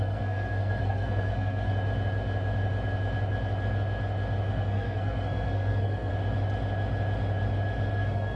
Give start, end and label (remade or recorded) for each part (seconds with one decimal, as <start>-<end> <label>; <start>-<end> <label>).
0.0-1.7 remade; 1.7-4.5 recorded; 4.5-6.1 remade; 6.1-7.9 recorded; 7.9-8.4 remade